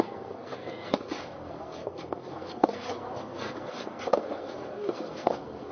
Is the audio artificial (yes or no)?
yes